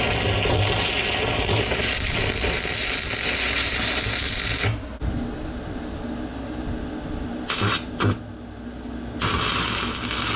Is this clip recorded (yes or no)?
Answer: yes